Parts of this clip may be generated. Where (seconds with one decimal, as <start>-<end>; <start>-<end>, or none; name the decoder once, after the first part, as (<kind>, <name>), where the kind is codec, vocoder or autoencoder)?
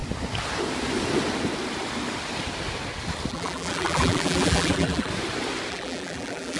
3.3-5.1 (vocoder, BigVGAN v2); 5.7-6.6